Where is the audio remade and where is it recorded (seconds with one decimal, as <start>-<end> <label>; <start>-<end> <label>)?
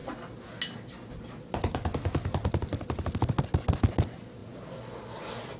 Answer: 0.0-5.6 recorded